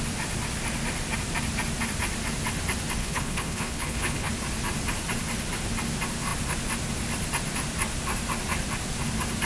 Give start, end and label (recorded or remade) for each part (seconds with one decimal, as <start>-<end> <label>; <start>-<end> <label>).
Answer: 0.0-3.0 recorded; 3.0-4.3 remade; 4.3-9.5 recorded